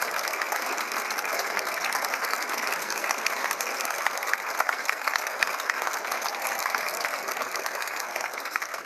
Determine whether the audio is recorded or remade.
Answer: remade